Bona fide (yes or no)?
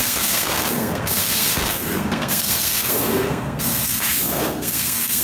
no